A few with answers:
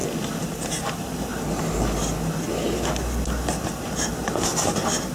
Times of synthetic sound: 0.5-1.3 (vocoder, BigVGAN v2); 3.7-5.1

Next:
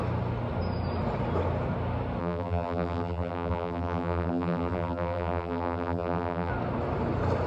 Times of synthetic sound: 2.2-6.5 (vocoder, BigVGAN v2)

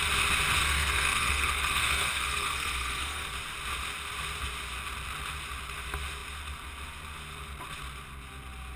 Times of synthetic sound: 0.6-3.3 (codec, SNAC)

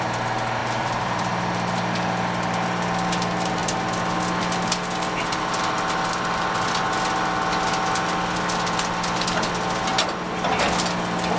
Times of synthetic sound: 0.6-1.3 (vocoder, BigVGAN v2)

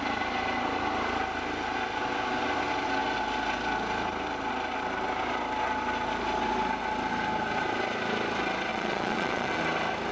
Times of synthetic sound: 8.7-9.6 (vocoder, Vocos)

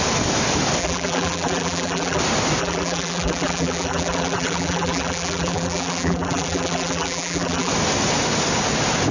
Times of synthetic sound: 0.8-2.2 (vocoder, BigVGAN v2); 2.6-7.7

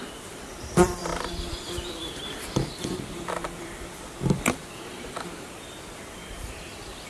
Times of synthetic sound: 0.0-7.1 (vocoder, BigVGAN v2)

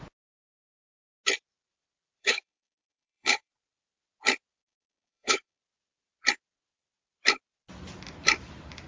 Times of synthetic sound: 2.2-3.5 (codec, DAC); 4.6-5.6